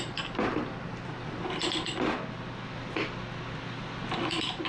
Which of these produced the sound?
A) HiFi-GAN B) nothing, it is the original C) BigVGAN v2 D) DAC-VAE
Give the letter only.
B